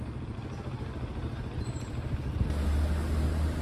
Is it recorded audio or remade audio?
recorded